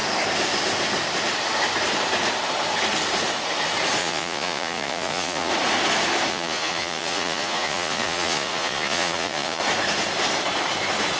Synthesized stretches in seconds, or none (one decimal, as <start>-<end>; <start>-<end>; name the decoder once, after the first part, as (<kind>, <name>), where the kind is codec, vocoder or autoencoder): 4.0-5.5 (vocoder, Vocos); 6.3-9.6

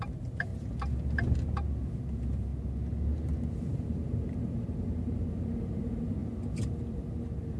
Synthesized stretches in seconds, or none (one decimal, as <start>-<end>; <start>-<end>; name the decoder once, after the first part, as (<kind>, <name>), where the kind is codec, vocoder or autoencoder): 0.0-0.5 (vocoder, BigVGAN v2); 2.1-2.5; 3.7-7.6

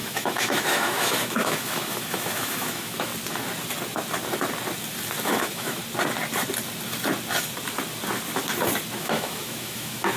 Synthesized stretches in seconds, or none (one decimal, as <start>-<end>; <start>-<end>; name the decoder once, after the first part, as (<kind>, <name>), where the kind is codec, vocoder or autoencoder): 0.0-3.1 (autoencoder, DAC-VAE); 5.2-5.8; 9.0-10.2

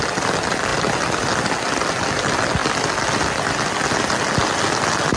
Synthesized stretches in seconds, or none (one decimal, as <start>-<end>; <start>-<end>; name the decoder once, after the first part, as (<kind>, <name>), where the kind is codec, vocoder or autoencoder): none

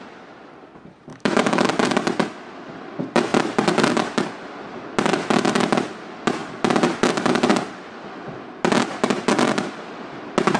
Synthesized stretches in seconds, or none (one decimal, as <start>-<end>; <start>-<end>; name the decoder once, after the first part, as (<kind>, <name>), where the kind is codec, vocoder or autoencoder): 1.1-1.7 (autoencoder, DAC-VAE)

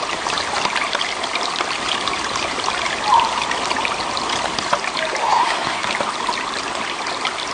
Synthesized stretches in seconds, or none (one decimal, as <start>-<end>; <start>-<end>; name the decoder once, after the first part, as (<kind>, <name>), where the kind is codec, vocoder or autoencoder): 5.2-5.9 (codec, SNAC)

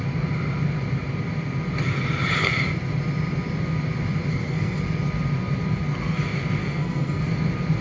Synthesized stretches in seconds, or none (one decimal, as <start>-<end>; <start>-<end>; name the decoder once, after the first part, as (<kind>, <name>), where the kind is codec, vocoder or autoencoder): 4.3-4.8 (codec, SNAC); 6.6-7.2